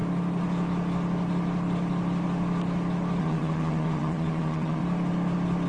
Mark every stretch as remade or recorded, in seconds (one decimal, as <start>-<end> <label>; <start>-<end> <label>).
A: 0.0-3.2 recorded; 3.2-4.8 remade; 4.8-5.7 recorded